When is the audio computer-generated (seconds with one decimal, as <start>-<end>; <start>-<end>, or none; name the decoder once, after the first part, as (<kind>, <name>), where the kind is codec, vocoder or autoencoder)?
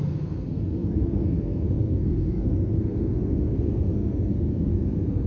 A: 0.0-5.3 (codec, SNAC)